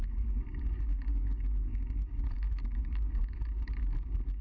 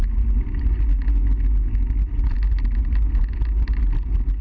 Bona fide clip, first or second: second